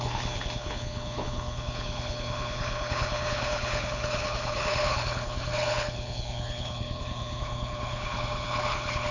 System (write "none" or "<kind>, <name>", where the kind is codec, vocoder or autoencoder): codec, HILCodec